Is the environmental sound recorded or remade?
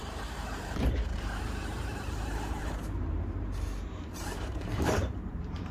remade